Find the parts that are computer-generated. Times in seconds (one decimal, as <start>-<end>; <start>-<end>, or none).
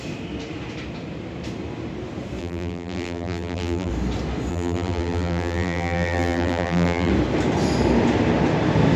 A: 2.4-3.9; 4.5-7.1